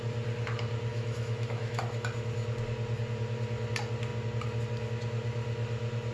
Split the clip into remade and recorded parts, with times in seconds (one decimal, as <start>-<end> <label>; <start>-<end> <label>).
0.0-0.9 recorded; 0.9-1.8 remade; 1.8-6.1 recorded